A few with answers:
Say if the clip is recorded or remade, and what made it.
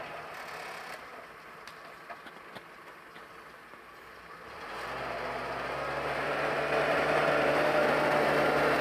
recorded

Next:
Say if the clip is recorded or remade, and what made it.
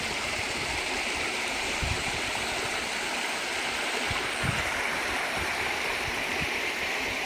remade, vocoder, BigVGAN v2